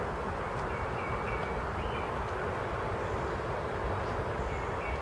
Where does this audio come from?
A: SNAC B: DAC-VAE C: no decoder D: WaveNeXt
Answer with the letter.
C